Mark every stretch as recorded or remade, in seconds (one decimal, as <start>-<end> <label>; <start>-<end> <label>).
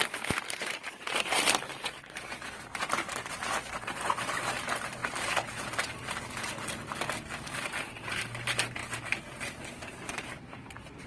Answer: 0.0-5.0 remade; 5.0-7.6 recorded; 7.6-8.8 remade; 8.8-10.1 recorded; 10.1-11.1 remade